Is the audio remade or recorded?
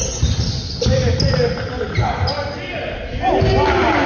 recorded